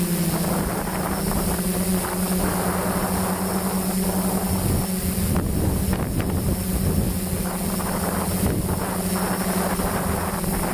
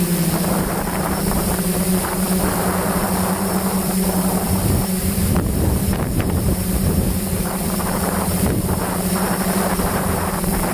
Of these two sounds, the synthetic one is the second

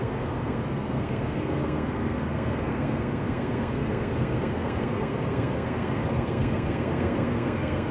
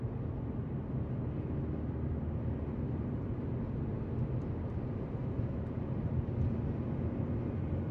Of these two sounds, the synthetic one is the first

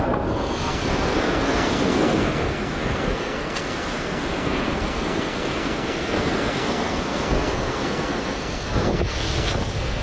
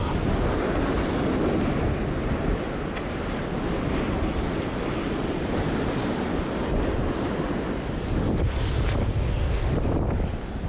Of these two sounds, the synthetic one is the first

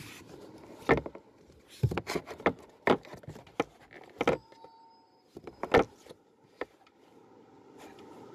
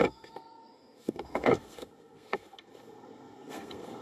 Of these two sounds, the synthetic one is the second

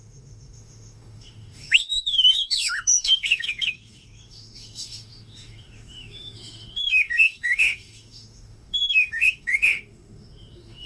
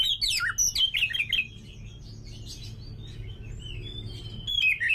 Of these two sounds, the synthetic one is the first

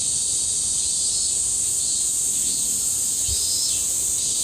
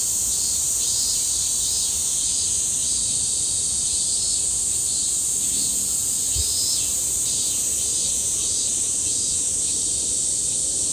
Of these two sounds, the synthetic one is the second